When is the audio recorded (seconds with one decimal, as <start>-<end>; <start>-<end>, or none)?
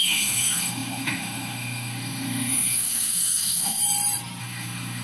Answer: 3.8-4.4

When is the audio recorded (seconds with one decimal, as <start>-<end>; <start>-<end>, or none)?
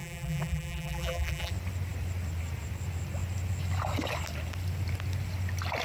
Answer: 1.5-5.8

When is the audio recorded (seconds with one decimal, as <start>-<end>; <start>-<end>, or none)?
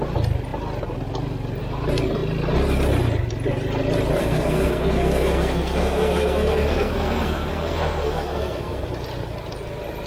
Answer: 0.0-4.2; 8.8-10.1